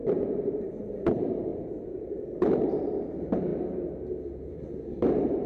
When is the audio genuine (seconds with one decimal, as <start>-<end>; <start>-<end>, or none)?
1.5-2.4; 3.5-4.5